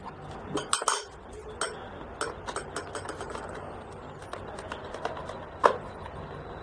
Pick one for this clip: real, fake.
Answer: real